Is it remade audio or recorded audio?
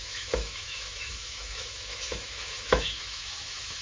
remade